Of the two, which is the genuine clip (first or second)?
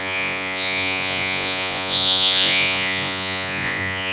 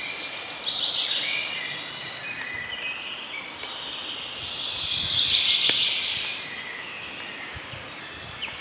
second